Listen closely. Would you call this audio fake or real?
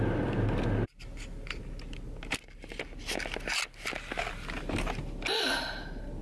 real